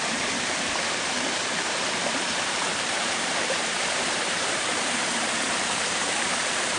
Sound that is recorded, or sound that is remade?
remade